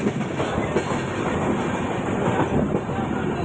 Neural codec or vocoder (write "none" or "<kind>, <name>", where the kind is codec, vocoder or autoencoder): none